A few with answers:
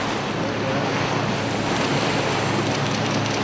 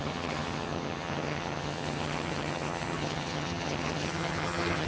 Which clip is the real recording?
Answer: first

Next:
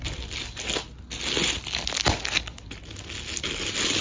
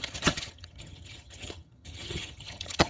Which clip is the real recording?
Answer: first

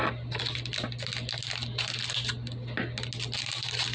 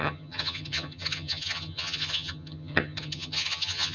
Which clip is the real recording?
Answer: first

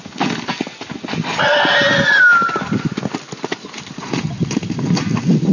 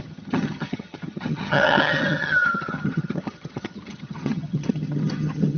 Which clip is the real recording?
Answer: first